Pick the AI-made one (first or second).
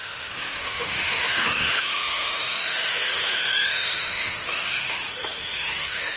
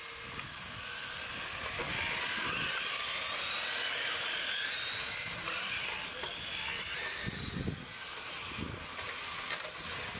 first